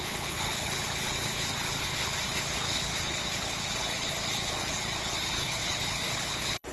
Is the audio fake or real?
fake